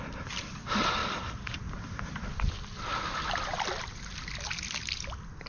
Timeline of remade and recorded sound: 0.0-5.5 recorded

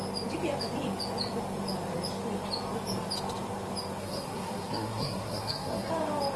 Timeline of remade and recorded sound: 0.0-4.0 recorded; 4.0-5.9 remade; 5.9-6.4 recorded

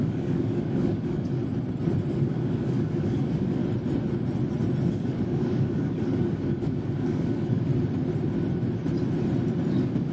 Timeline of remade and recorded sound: 0.0-1.4 remade; 1.4-2.1 recorded; 2.1-3.6 remade; 3.6-4.9 recorded; 4.9-7.7 remade; 7.7-9.7 recorded; 9.7-10.1 remade